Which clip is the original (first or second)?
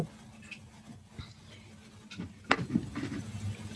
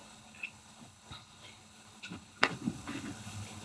first